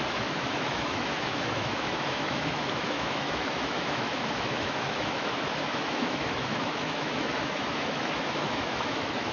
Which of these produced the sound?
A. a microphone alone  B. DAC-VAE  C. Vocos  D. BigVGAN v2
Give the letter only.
B